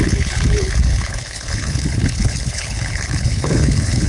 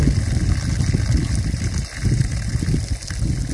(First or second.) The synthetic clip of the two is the first